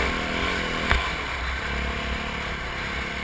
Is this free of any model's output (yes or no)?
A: yes